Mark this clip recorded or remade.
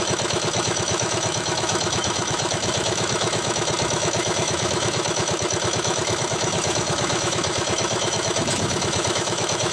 remade